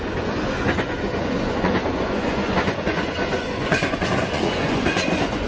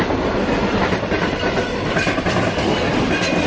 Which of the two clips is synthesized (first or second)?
first